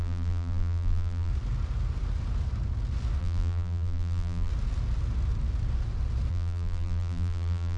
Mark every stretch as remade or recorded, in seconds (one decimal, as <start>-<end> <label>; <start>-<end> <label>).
0.0-1.3 remade; 1.3-3.2 recorded; 3.2-4.5 remade; 4.5-6.3 recorded; 6.3-7.8 remade